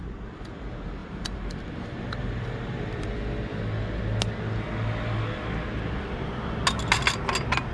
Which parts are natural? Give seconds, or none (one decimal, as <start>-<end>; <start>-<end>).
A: 0.0-1.0; 3.1-7.7